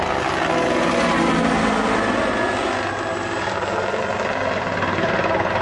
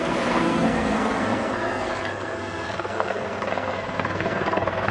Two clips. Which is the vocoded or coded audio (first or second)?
second